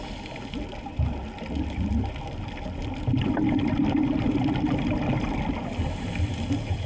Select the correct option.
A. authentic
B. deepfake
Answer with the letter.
A